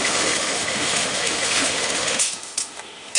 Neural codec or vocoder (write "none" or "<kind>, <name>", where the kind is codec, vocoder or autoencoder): autoencoder, DAC-VAE